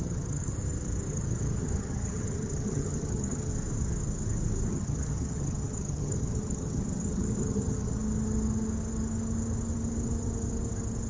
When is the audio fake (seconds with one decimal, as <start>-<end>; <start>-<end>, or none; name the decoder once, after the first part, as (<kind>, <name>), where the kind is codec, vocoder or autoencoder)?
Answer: 0.0-0.5 (vocoder, HiFi-GAN); 1.1-3.5; 4.7-8.0